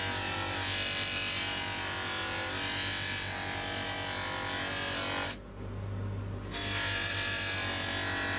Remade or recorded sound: recorded